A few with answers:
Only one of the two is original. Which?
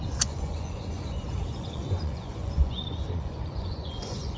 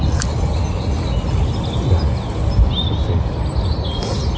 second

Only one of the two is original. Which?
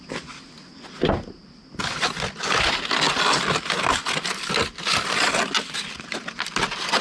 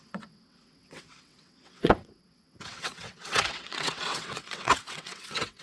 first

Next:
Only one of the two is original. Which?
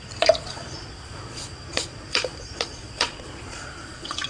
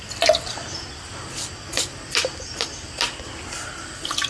second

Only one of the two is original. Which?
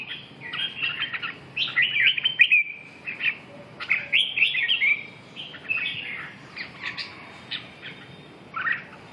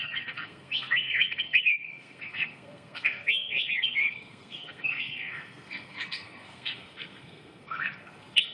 first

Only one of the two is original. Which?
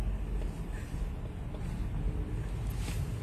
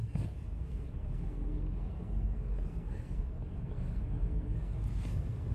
first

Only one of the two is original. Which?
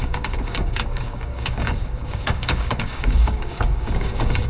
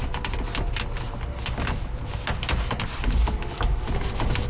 second